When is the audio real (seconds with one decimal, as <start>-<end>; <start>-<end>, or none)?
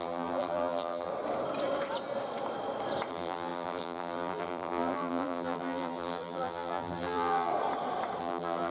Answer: 1.1-3.1; 7.5-8.2